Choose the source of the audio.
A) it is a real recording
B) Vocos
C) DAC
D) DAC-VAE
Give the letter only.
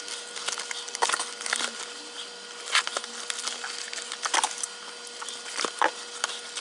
A